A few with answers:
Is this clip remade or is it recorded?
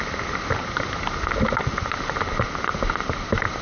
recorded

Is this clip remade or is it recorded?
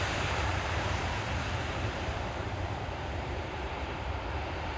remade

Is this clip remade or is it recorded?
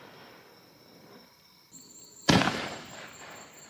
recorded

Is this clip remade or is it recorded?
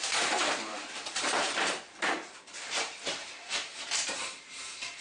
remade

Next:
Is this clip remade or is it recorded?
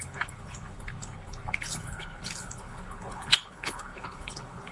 remade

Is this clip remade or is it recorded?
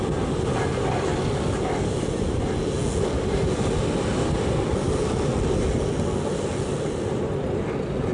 recorded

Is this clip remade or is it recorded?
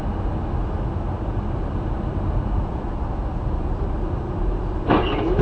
recorded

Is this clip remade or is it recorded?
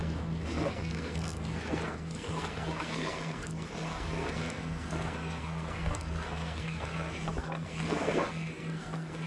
remade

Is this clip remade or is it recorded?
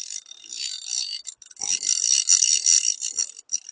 recorded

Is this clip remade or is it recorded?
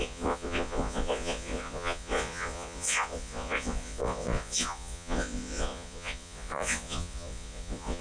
remade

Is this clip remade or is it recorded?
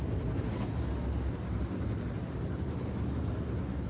recorded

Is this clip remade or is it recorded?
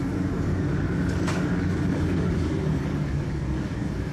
remade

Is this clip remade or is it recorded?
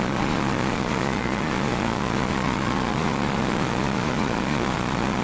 remade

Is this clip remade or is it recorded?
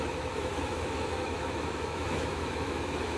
remade